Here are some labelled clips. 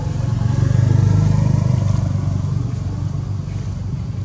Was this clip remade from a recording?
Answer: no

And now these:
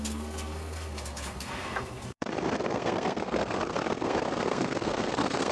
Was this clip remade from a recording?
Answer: yes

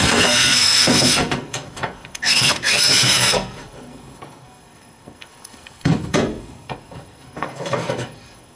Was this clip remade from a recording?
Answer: yes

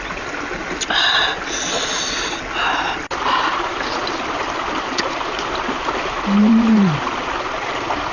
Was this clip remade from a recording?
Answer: no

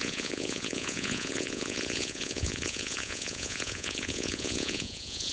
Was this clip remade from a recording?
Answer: yes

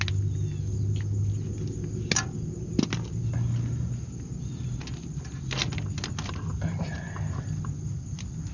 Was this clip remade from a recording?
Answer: no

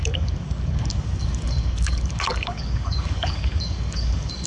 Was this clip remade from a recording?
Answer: yes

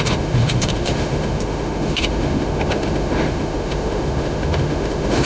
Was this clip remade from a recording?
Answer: yes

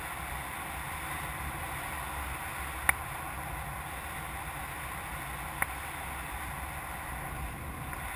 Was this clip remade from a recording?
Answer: no